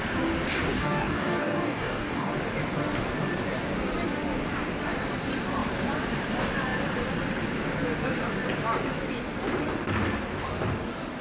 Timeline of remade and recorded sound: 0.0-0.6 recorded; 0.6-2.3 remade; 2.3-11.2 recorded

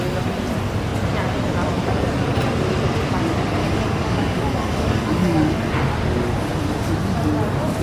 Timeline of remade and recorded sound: 0.0-3.6 recorded; 3.6-5.7 remade; 5.7-7.8 recorded

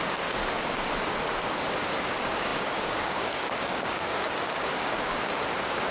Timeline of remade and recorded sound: 0.0-0.4 remade; 0.4-1.9 recorded; 1.9-5.3 remade; 5.3-5.9 recorded

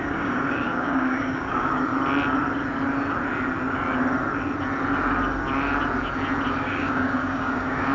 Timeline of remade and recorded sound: 0.0-1.9 remade; 1.9-6.6 recorded; 6.6-7.9 remade